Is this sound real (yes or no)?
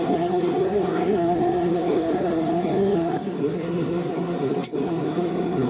no